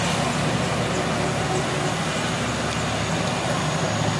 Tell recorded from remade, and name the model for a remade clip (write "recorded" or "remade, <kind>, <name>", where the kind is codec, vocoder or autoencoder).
recorded